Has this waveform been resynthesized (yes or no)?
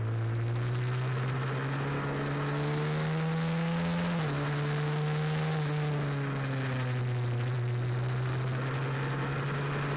no